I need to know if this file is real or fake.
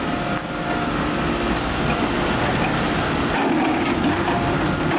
real